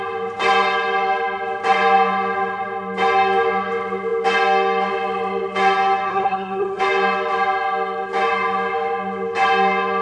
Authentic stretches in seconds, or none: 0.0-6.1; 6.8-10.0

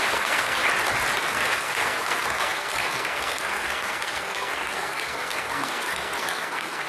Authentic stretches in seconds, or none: 0.6-1.2

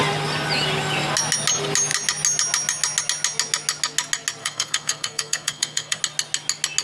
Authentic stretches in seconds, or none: 0.0-4.4; 6.0-6.8

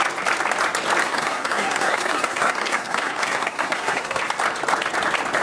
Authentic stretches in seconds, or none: 0.0-1.0; 4.2-5.4

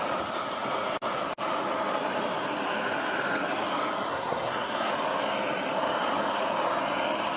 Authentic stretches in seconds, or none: 0.0-4.1; 4.9-7.4

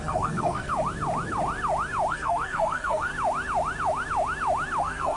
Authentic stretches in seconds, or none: 0.7-2.1; 3.1-4.8